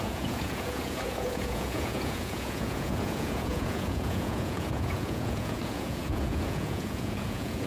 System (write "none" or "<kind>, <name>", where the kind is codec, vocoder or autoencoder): vocoder, Vocos